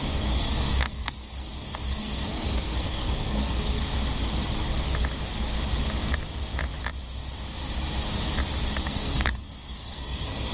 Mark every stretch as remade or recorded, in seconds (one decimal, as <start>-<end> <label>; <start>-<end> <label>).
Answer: 0.0-3.8 remade; 3.8-8.8 recorded; 8.8-10.5 remade